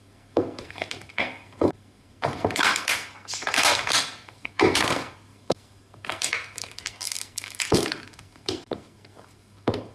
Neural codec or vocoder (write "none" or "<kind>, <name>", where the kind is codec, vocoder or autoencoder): codec, SNAC